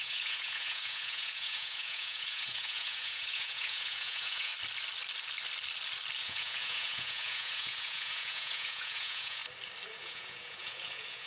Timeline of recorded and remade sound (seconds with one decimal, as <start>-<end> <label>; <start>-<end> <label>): 0.0-4.5 remade; 4.5-6.2 recorded; 6.2-9.4 remade; 9.4-10.0 recorded; 10.0-11.3 remade